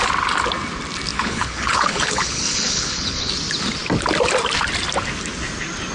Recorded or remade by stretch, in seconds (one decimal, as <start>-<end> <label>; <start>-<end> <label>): 0.0-1.1 recorded; 1.1-3.3 remade; 3.3-5.9 recorded